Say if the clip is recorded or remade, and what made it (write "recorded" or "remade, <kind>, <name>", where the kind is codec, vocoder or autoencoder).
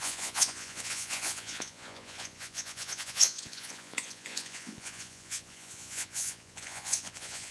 remade, vocoder, Vocos